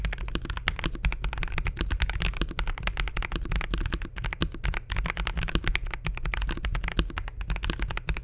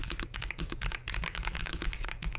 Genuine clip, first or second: first